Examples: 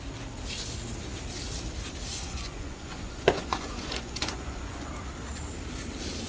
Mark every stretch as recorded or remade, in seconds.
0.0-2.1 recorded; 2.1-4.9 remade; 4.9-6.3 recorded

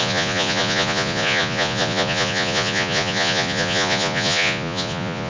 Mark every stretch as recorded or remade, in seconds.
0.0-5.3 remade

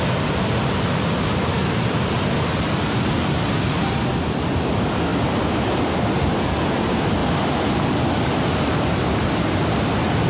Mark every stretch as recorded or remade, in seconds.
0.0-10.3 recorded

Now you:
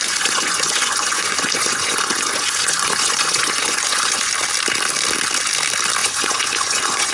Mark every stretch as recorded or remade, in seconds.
0.0-4.3 remade; 4.3-6.0 recorded; 6.0-7.1 remade

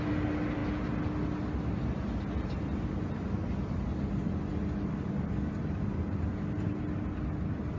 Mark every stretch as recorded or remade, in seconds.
0.0-7.8 recorded